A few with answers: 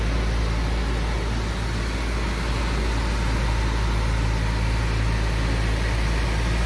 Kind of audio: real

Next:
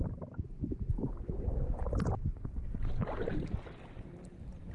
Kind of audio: real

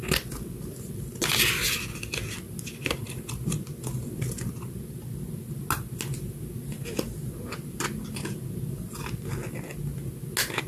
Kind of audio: real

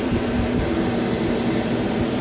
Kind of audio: fake